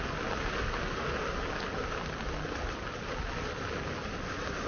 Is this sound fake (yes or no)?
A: no